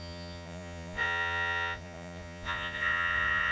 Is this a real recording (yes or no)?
no